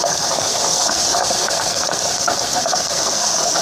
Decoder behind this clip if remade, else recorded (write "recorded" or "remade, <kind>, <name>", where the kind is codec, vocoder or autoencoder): remade, codec, SNAC